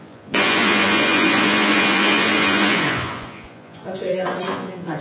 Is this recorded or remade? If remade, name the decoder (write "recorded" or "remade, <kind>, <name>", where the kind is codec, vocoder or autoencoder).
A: remade, vocoder, Vocos